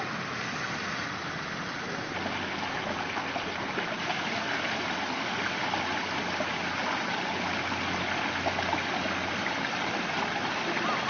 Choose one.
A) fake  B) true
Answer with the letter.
B